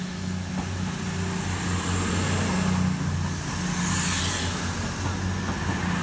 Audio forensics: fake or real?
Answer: real